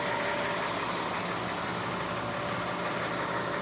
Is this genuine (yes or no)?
yes